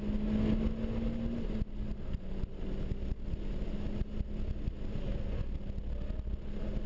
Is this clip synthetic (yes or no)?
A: no